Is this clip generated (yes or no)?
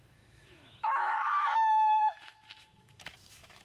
yes